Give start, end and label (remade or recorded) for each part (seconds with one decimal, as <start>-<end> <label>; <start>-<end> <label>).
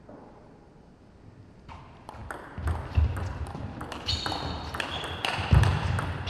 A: 0.0-6.3 recorded